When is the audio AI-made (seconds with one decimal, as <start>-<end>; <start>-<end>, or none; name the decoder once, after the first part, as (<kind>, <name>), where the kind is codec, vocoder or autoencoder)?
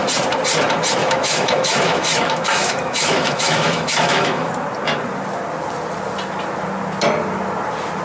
1.0-4.5 (autoencoder, DAC-VAE)